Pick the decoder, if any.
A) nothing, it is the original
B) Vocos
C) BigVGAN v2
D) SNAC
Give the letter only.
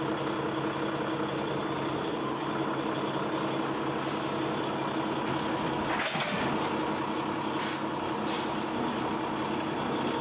A